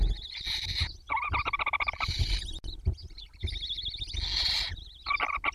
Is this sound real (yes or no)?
yes